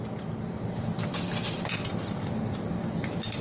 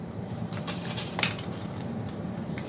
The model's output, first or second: second